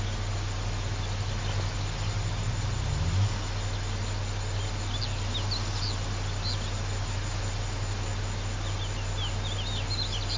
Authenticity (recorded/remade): recorded